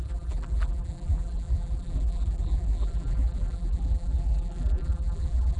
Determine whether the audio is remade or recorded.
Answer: remade